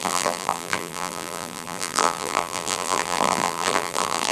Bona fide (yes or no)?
no